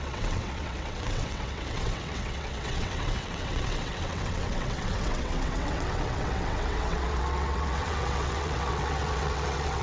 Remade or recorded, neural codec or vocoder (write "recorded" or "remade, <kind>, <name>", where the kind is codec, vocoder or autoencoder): remade, vocoder, WaveNeXt